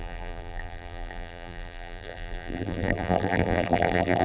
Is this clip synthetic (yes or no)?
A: yes